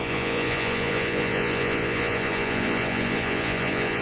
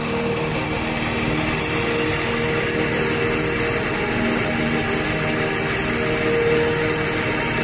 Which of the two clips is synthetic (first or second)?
first